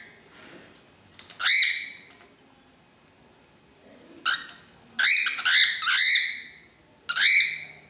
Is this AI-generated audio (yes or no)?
no